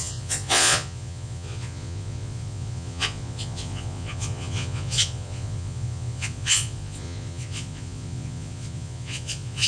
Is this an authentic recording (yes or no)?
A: no